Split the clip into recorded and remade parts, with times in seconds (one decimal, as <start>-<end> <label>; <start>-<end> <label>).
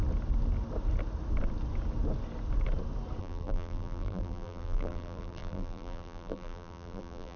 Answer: 0.0-3.2 recorded; 3.2-7.4 remade